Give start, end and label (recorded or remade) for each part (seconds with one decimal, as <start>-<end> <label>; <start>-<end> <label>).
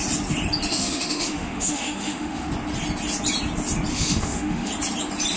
0.0-0.7 recorded; 0.7-2.5 remade; 2.5-3.9 recorded; 3.9-4.7 remade; 4.7-5.4 recorded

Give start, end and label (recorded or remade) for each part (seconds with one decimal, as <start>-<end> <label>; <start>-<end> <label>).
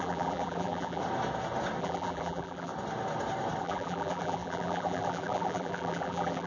0.0-1.0 remade; 1.0-1.8 recorded; 1.8-2.7 remade; 2.7-3.6 recorded; 3.6-6.5 remade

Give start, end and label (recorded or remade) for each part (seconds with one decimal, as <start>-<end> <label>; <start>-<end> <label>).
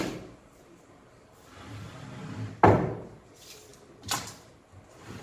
0.0-5.2 recorded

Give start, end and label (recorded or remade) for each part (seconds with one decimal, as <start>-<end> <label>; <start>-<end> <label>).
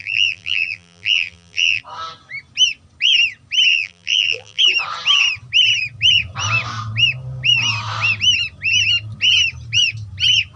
0.0-1.8 remade; 1.8-3.7 recorded; 3.7-4.6 remade; 4.6-10.6 recorded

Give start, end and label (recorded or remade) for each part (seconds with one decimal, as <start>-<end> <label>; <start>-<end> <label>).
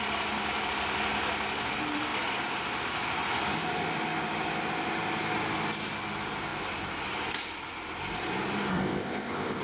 0.0-8.7 recorded; 8.7-9.6 remade